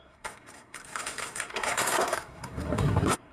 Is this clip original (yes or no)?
no